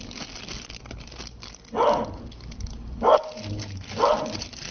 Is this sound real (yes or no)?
yes